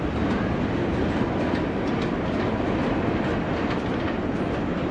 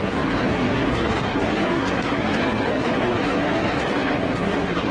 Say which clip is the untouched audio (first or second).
first